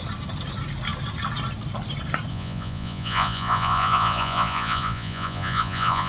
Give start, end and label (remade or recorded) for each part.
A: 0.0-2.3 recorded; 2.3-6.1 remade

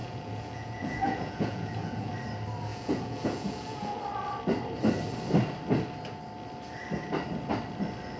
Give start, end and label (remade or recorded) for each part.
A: 0.0-2.1 remade; 2.1-2.7 recorded; 2.7-4.0 remade; 4.0-8.2 recorded

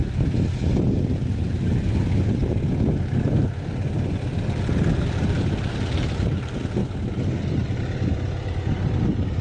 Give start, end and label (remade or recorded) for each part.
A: 0.0-9.4 recorded

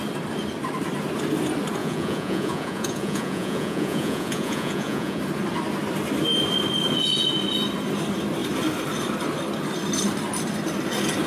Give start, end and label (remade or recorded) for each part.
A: 0.0-1.8 recorded; 1.8-5.2 remade; 5.2-11.3 recorded

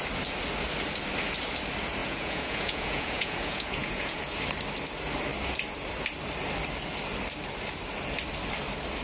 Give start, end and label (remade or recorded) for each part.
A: 0.0-2.0 recorded; 2.0-4.2 remade; 4.2-9.0 recorded

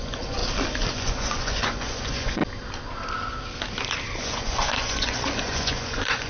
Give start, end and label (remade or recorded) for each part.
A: 0.0-0.4 remade; 0.4-0.9 recorded; 0.9-2.4 remade; 2.4-4.2 recorded; 4.2-6.3 remade

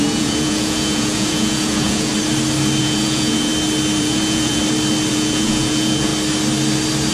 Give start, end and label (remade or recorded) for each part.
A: 0.0-2.1 remade; 2.1-2.8 recorded; 2.8-3.5 remade; 3.5-4.0 recorded; 4.0-4.6 remade; 4.6-5.1 recorded; 5.1-6.1 remade; 6.1-7.1 recorded